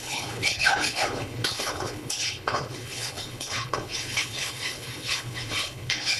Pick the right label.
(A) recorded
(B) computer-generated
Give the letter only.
B